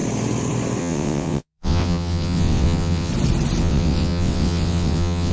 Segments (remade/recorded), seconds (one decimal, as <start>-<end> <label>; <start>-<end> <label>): 0.0-0.8 recorded; 0.8-3.1 remade; 3.1-3.6 recorded; 3.6-5.3 remade